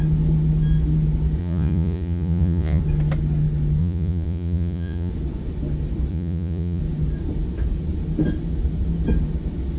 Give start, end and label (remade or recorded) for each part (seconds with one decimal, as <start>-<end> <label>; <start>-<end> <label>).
0.0-1.4 recorded; 1.4-2.8 remade; 2.8-3.8 recorded; 3.8-5.1 remade; 5.1-6.1 recorded; 6.1-6.8 remade; 6.8-9.8 recorded